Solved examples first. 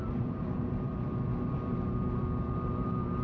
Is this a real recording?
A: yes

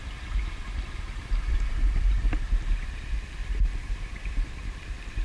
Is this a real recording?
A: no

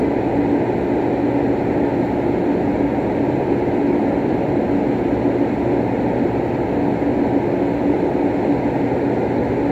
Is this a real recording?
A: yes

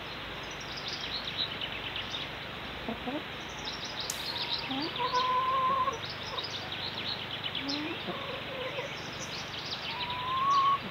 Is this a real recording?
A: yes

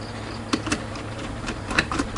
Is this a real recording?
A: no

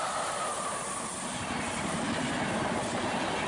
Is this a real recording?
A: no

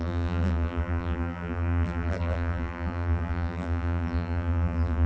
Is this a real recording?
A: no